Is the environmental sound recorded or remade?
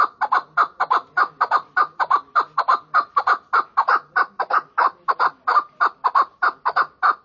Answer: recorded